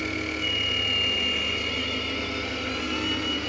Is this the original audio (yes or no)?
yes